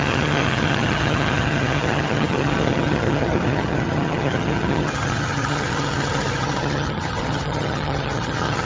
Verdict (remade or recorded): remade